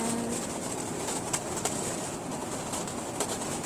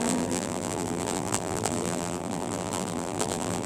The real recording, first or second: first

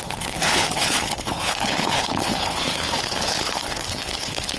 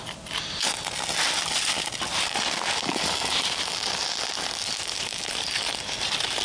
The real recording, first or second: second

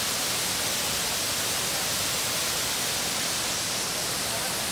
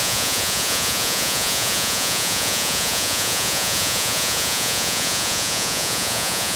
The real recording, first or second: first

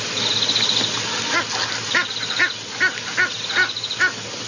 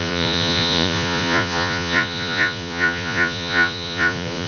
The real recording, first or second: first